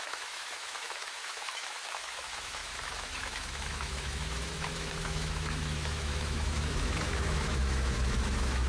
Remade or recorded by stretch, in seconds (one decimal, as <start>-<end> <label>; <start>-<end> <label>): 0.0-8.7 remade